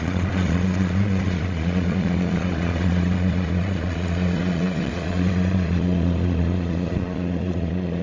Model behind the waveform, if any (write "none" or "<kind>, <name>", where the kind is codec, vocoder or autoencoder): vocoder, Vocos